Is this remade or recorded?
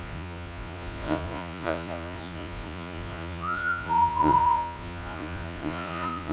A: remade